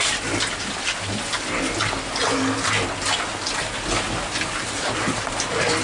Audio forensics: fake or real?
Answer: real